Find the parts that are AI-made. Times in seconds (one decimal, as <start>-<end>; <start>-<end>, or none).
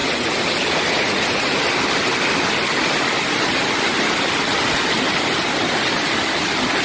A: 0.0-1.6